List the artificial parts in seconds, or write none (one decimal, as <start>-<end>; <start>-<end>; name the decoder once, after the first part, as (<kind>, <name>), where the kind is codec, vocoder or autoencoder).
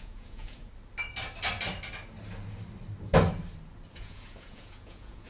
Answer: 0.0-0.7 (vocoder, Vocos); 3.9-5.3